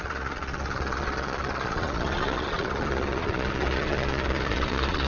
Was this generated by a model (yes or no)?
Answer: yes